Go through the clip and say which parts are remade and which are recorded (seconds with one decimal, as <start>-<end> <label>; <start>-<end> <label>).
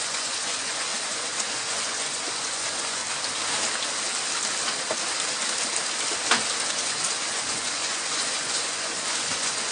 0.0-3.0 remade; 3.0-6.7 recorded; 6.7-9.7 remade